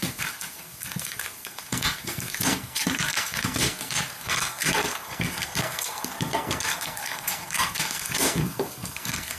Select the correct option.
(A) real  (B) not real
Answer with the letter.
B